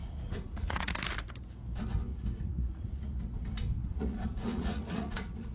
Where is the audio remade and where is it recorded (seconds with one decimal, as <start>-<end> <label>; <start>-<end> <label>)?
0.0-0.9 remade; 0.9-2.1 recorded; 2.1-3.2 remade; 3.2-3.8 recorded; 3.8-5.5 remade